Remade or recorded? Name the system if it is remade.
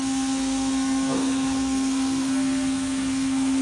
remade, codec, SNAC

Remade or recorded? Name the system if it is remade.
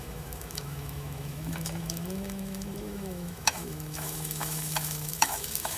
remade, autoencoder, DAC-VAE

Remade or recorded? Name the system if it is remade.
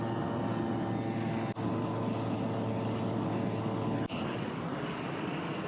recorded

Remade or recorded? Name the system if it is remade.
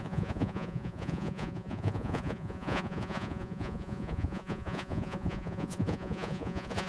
remade, vocoder, Vocos